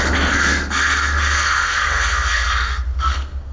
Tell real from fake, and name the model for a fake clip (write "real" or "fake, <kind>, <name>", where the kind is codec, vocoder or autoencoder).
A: fake, codec, SNAC